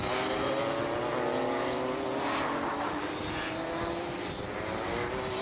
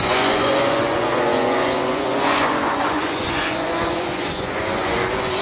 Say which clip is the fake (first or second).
second